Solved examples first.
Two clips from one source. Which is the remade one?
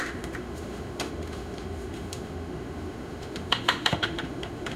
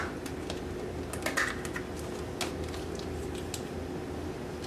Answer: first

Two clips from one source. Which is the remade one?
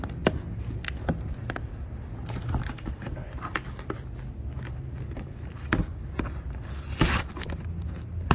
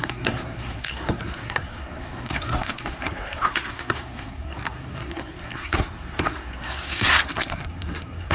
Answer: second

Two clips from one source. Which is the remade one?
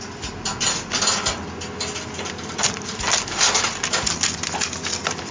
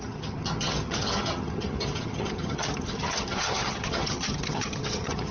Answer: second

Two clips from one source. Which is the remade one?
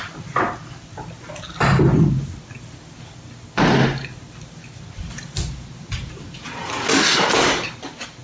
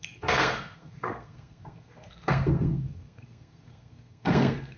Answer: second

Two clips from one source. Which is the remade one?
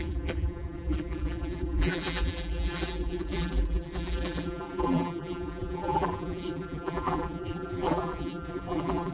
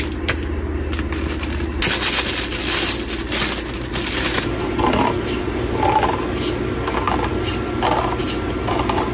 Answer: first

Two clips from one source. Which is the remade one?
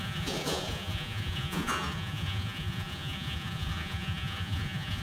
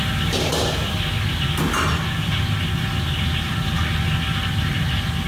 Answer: first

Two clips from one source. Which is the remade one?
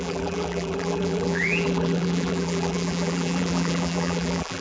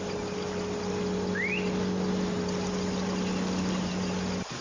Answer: first